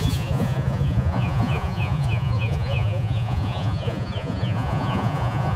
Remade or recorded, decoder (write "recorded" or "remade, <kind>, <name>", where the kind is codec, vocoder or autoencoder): remade, vocoder, Vocos